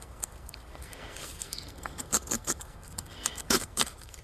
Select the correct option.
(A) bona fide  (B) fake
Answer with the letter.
B